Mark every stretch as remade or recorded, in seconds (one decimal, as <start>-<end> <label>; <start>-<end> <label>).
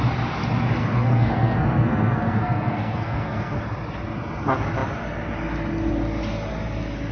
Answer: 0.0-0.8 recorded; 0.8-3.6 remade; 3.6-7.1 recorded